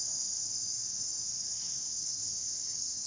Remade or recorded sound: remade